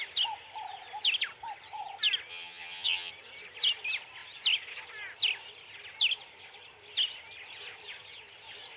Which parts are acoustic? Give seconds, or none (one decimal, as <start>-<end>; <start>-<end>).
0.0-2.3; 3.1-8.8